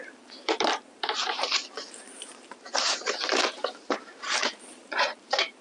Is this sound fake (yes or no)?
yes